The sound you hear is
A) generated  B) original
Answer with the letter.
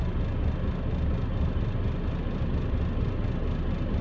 B